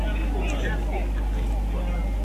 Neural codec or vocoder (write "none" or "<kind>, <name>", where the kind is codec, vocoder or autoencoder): none